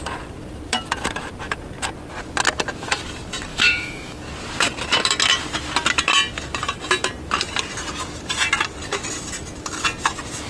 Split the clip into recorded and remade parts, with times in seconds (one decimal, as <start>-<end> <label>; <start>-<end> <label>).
0.0-3.5 recorded; 3.5-4.2 remade; 4.2-10.5 recorded